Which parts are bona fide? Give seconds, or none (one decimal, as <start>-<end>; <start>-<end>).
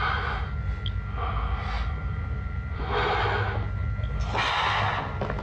0.0-2.0; 2.8-5.4